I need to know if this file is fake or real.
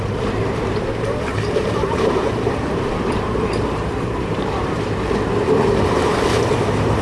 fake